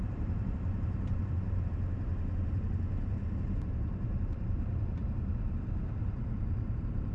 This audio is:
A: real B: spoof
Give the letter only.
B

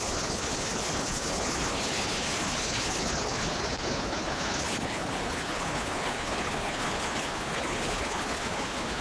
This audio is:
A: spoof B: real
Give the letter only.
A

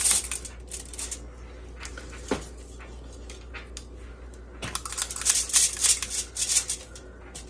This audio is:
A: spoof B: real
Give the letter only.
B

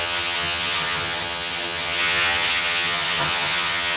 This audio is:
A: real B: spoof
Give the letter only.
B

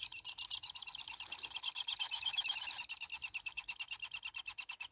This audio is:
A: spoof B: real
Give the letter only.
B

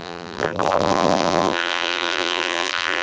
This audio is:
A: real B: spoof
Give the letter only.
B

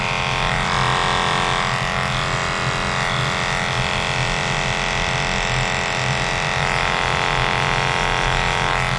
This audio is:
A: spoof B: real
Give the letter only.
B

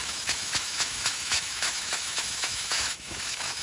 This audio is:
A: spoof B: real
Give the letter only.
A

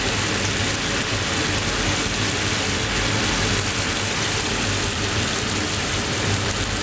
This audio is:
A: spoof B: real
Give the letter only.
B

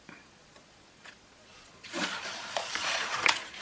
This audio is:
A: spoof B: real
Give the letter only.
A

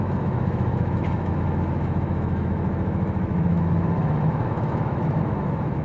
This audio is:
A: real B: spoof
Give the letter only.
B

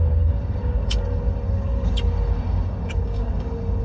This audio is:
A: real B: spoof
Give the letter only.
B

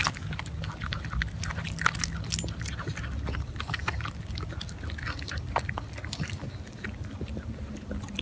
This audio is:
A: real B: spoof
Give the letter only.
A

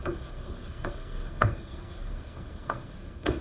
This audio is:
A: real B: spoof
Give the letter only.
B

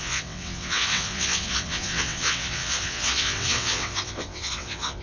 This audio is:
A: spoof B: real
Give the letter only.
A